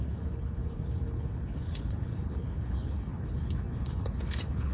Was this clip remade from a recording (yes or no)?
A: yes